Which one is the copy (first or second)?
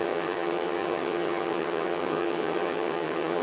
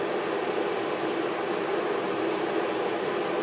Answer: first